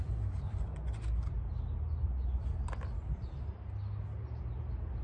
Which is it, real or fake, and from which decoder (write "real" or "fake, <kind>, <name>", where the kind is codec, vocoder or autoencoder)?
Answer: real